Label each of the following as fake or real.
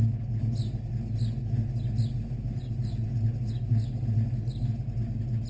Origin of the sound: real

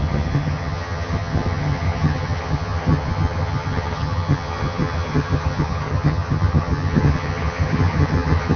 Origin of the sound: fake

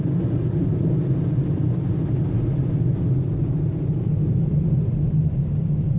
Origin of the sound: real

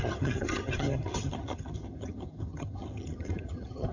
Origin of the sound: fake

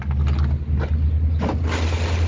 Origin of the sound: real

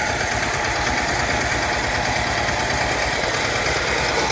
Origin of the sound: real